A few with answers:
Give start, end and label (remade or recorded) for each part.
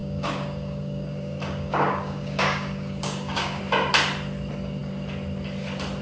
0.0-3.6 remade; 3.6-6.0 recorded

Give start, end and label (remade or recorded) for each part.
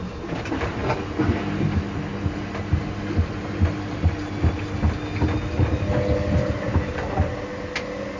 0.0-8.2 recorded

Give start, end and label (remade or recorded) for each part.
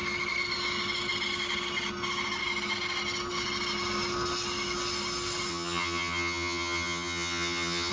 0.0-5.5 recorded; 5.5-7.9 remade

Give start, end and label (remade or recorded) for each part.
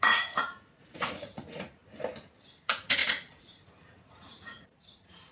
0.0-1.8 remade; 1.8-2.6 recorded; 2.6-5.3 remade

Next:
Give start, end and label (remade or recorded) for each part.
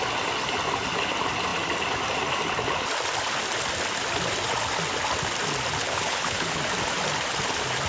0.0-5.8 recorded; 5.8-6.6 remade; 6.6-7.9 recorded